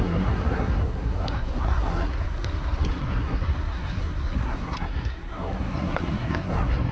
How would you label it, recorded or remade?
remade